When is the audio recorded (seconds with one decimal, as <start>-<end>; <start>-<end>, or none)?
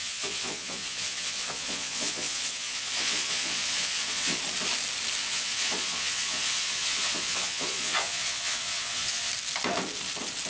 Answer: 4.4-5.2; 9.3-10.5